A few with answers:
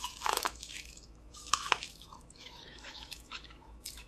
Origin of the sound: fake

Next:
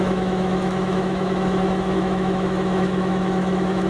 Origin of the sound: fake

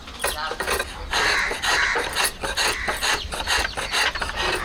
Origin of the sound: real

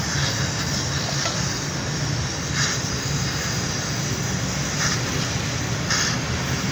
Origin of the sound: real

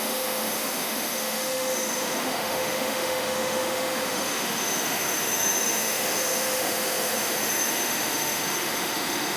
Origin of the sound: fake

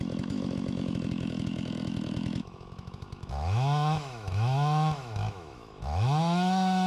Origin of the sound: fake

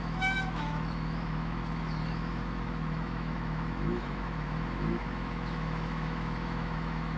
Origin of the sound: fake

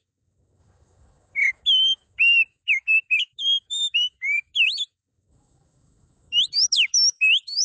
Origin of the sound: fake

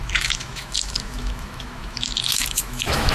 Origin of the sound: fake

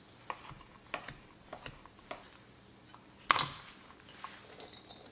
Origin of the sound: real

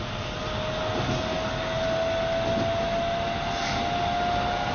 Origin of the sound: real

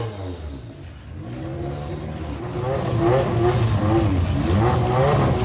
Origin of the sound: real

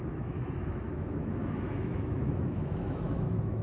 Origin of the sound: fake